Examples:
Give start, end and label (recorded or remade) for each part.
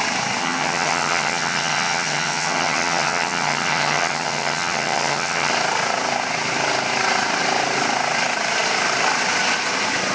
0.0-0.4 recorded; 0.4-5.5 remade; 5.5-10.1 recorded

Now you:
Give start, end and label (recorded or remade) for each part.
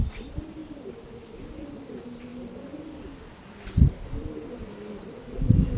0.0-5.8 recorded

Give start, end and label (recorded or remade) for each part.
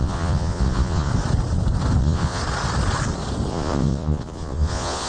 0.0-1.1 remade; 1.1-2.0 recorded; 2.0-2.4 remade; 2.4-3.5 recorded; 3.5-5.1 remade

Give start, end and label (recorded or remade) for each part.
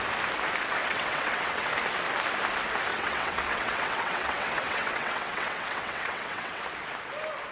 0.0-0.8 recorded; 0.8-1.7 remade; 1.7-2.9 recorded; 2.9-6.6 remade; 6.6-7.5 recorded